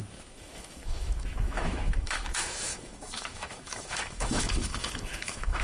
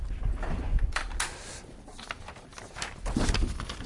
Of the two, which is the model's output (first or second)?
first